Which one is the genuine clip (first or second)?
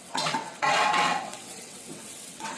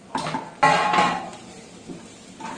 second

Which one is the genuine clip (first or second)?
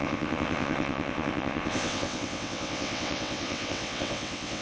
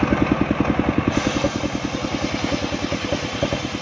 second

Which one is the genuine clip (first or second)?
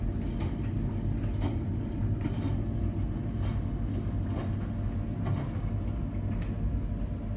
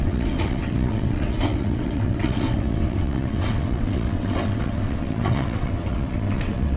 first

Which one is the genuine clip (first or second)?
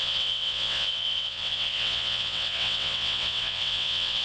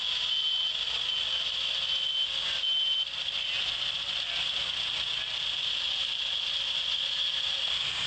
second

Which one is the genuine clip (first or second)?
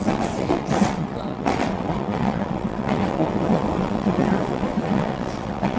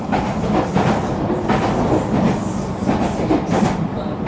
second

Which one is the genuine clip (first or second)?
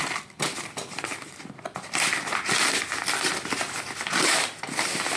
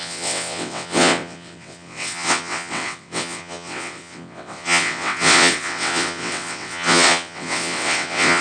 first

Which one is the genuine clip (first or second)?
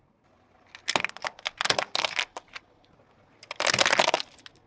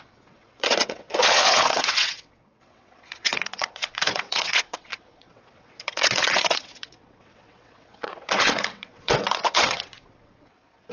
first